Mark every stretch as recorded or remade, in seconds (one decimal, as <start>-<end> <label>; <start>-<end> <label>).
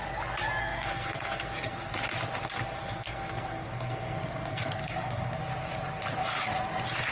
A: 0.0-0.6 recorded; 0.6-1.9 remade; 1.9-2.8 recorded; 2.8-5.4 remade; 5.4-7.1 recorded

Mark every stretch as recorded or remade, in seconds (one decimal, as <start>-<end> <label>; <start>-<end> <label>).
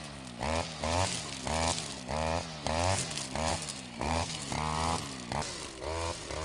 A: 0.0-3.5 recorded; 3.5-4.5 remade; 4.5-6.4 recorded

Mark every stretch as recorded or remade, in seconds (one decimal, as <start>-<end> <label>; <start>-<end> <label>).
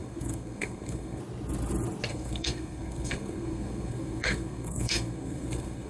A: 0.0-1.2 remade; 1.2-2.1 recorded; 2.1-5.9 remade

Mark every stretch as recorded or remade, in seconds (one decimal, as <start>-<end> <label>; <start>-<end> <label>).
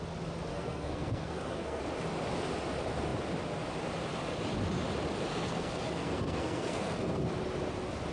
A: 0.0-0.5 recorded; 0.5-1.8 remade; 1.8-5.3 recorded; 5.3-7.3 remade; 7.3-8.1 recorded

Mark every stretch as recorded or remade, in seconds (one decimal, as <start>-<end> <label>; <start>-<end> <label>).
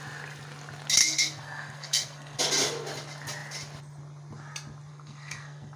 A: 0.0-1.0 recorded; 1.0-2.4 remade; 2.4-4.9 recorded; 4.9-5.8 remade